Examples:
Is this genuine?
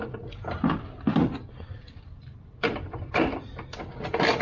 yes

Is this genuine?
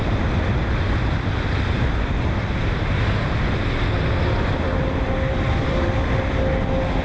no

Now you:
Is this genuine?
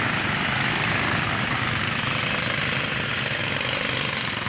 yes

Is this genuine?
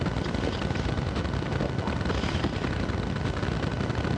yes